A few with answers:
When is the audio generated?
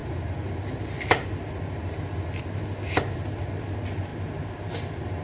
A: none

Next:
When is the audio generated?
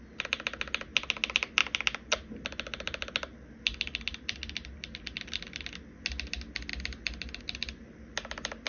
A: none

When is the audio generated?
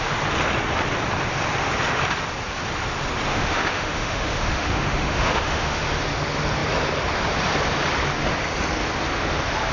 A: 3.3-5.8 (autoencoder, DAC-VAE)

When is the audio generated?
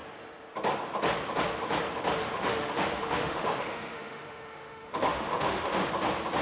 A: 2.2-5.9 (autoencoder, DAC-VAE)